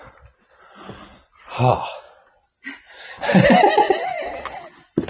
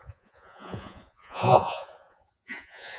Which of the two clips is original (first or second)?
first